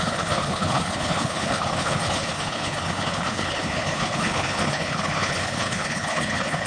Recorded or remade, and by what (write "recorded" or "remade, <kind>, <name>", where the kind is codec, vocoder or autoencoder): remade, codec, HILCodec